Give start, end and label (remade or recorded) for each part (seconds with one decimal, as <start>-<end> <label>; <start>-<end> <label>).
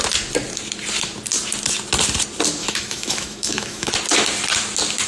0.0-2.6 recorded; 2.6-3.9 remade; 3.9-5.1 recorded